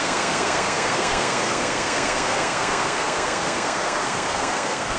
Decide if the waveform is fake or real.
fake